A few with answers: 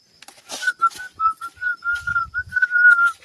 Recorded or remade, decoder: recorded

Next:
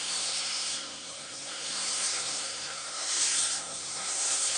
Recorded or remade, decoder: remade, codec, SNAC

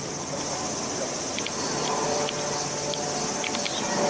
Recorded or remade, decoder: recorded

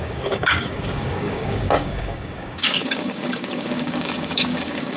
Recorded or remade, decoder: remade, codec, DAC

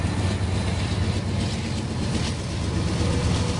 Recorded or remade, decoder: recorded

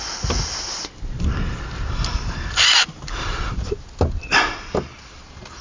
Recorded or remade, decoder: recorded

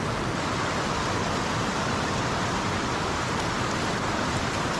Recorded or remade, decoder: recorded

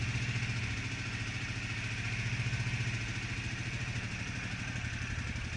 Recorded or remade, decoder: recorded